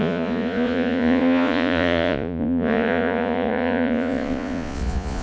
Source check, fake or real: fake